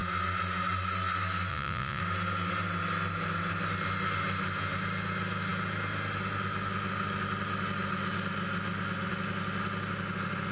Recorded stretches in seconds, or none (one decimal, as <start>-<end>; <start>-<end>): 0.0-1.5; 2.0-10.5